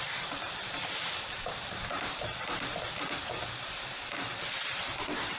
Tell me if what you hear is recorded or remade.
remade